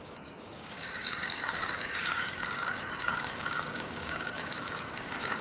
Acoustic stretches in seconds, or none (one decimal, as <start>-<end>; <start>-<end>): none